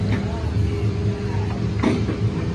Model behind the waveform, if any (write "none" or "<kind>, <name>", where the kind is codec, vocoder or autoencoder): none